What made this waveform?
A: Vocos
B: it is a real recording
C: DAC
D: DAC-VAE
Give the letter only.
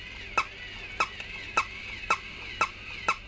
B